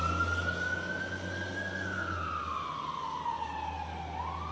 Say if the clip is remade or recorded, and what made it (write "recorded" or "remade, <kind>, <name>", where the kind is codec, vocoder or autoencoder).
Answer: recorded